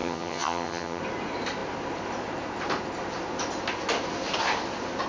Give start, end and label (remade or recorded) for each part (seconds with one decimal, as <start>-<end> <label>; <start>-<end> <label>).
0.0-1.0 remade; 1.0-5.1 recorded